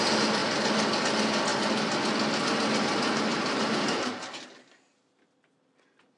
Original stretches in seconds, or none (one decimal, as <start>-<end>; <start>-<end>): 0.0-3.3; 4.1-6.2